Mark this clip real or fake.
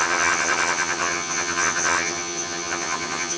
fake